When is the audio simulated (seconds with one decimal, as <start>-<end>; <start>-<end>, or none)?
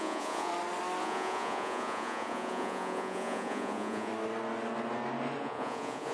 0.0-0.5; 1.0-4.1; 5.4-6.1